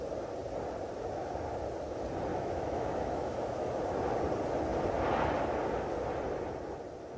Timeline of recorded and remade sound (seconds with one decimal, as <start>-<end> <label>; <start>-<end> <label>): 0.0-2.3 recorded; 2.3-3.8 remade; 3.8-7.2 recorded